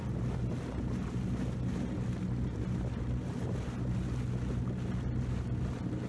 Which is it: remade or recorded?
recorded